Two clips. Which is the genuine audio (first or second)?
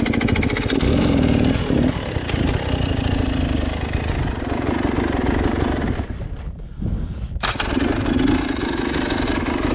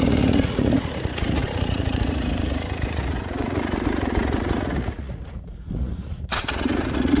first